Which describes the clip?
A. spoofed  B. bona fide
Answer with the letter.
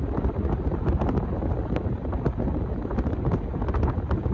B